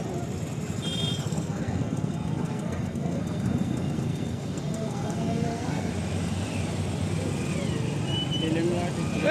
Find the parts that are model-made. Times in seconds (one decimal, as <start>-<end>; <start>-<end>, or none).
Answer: 1.2-5.9